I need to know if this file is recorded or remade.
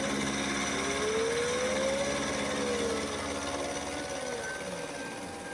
recorded